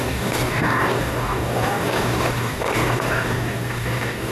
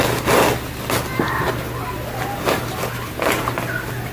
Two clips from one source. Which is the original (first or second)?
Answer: second